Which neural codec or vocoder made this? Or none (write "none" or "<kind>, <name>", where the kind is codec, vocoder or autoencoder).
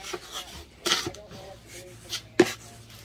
none